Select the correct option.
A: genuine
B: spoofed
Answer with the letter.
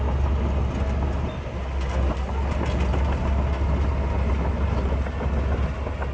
A